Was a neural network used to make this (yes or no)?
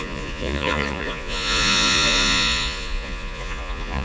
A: yes